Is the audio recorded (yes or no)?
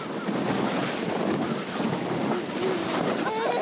yes